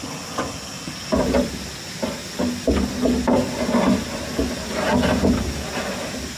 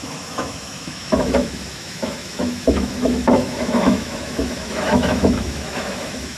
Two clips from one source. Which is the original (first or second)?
first